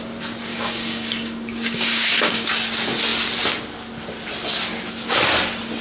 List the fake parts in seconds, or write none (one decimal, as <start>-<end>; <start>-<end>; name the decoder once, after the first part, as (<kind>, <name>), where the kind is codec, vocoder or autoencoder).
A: 0.5-2.5 (codec, DAC)